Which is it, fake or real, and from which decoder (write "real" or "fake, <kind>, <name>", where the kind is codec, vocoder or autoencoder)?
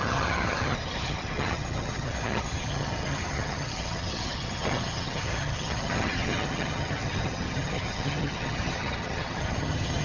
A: fake, vocoder, HiFi-GAN